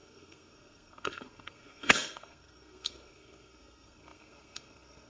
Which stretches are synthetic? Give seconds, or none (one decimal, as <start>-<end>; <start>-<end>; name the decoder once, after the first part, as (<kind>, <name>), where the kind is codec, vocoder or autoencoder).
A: 0.0-5.1 (codec, SNAC)